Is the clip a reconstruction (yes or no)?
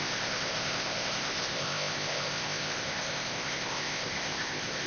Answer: yes